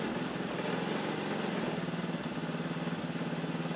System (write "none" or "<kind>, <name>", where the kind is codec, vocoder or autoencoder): none